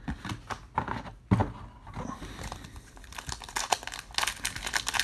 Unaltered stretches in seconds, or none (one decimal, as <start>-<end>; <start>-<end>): 0.0-5.0